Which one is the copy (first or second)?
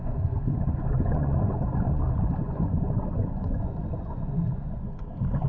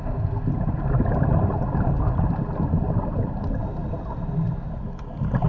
first